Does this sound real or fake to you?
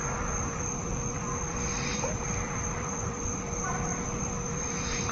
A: fake